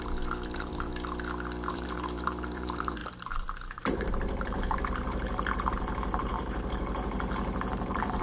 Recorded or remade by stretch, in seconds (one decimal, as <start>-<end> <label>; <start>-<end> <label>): 0.0-0.9 remade; 0.9-1.7 recorded; 1.7-8.2 remade